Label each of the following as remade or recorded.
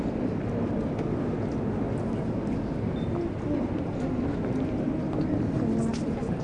recorded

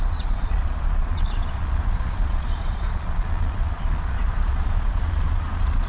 remade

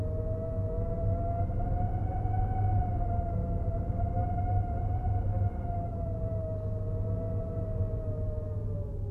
recorded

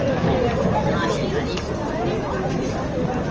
recorded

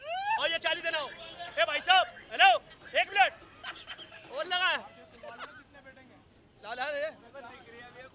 recorded